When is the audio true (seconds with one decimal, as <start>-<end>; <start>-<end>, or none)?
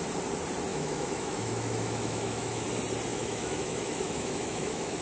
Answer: 0.0-0.7; 2.7-3.1